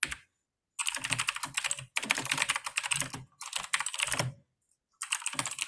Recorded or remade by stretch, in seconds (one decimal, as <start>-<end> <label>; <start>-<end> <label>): 0.0-5.7 recorded